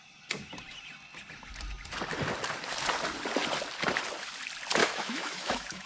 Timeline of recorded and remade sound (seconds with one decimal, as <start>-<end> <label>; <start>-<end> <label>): 0.0-4.8 recorded; 4.8-5.9 remade